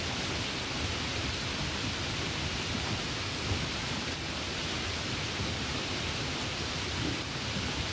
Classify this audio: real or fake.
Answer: real